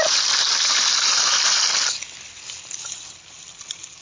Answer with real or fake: real